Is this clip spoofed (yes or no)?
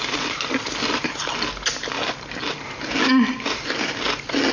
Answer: no